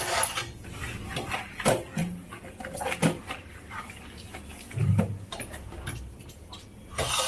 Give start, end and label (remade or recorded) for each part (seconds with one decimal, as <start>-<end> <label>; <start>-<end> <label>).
0.0-7.3 recorded